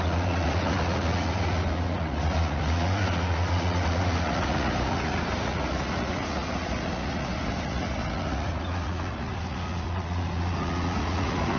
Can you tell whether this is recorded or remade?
remade